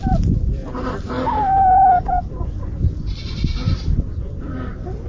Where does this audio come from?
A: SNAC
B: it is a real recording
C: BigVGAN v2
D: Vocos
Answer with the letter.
B